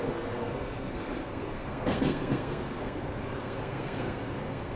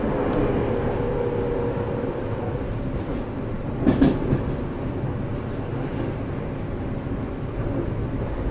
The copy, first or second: first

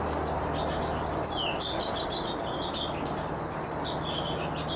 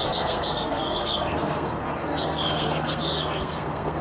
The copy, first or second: second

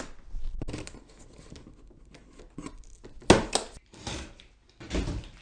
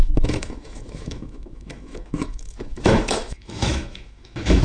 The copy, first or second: second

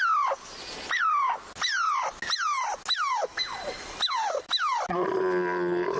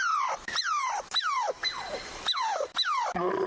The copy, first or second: second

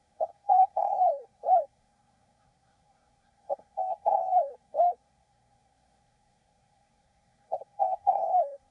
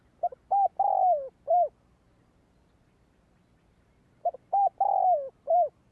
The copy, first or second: first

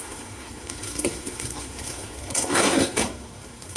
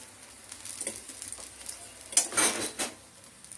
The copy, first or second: first